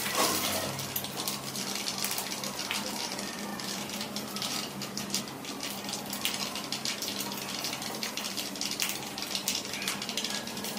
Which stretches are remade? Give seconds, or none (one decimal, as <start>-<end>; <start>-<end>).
3.5-5.2